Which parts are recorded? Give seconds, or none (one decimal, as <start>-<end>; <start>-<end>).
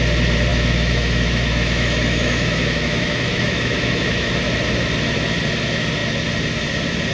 0.0-0.5; 4.3-7.1